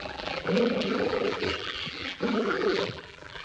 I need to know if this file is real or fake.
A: fake